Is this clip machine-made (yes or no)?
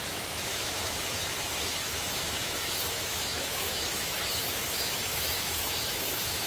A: yes